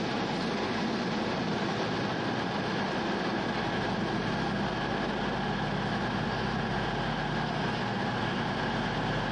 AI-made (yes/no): no